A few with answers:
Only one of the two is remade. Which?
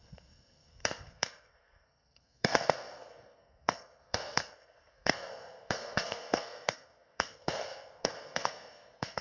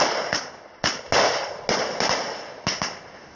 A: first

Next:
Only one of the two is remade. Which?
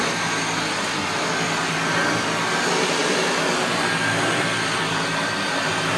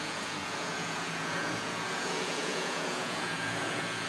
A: second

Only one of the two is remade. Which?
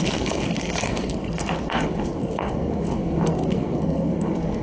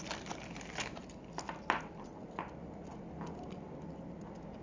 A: first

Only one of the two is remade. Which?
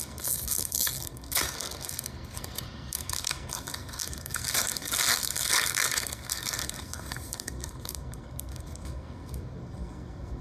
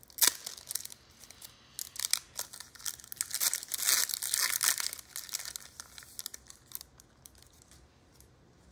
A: first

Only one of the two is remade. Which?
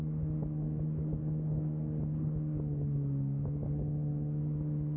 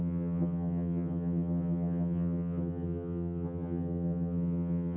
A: second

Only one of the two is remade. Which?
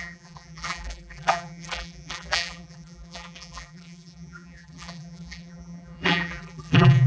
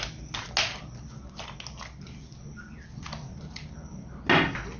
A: first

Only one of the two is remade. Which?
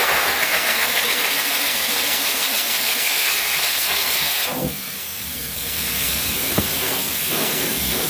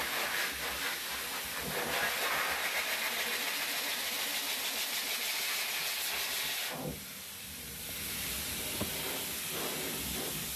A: first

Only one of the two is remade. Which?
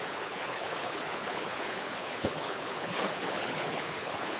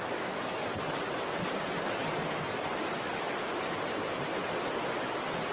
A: first